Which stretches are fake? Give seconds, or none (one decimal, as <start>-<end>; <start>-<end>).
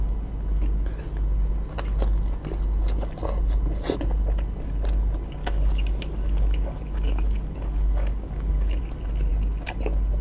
5.4-8.8